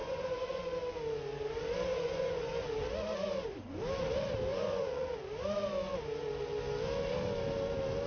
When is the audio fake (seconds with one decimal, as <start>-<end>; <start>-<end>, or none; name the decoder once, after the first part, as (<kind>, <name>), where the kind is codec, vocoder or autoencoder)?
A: 0.0-0.6 (vocoder, Vocos); 1.9-2.5; 4.5-5.1